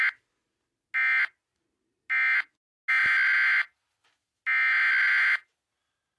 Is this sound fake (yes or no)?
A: no